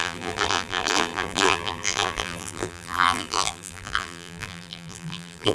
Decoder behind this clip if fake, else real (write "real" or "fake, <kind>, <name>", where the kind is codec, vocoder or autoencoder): fake, vocoder, BigVGAN v2